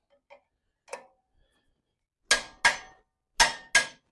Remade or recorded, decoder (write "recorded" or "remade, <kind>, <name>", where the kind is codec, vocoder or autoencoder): recorded